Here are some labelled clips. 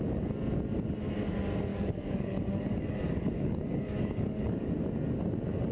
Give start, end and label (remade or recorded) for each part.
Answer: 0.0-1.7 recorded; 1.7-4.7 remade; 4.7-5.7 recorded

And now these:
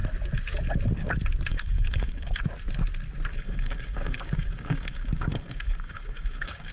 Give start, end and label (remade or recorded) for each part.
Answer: 0.0-1.5 recorded; 1.5-2.4 remade; 2.4-3.3 recorded; 3.3-6.7 remade

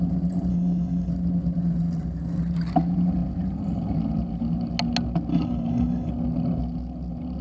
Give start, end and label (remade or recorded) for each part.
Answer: 0.0-0.5 recorded; 0.5-1.1 remade; 1.1-5.3 recorded; 5.3-6.1 remade; 6.1-7.4 recorded

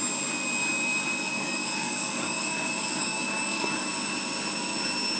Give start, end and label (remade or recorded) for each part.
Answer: 0.0-1.3 recorded; 1.3-3.9 remade; 3.9-5.2 recorded